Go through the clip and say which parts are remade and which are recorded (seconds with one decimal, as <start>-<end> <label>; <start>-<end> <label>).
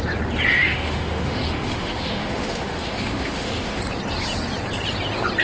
0.0-0.6 recorded; 0.6-3.8 remade; 3.8-5.4 recorded